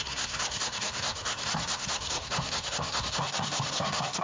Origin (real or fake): fake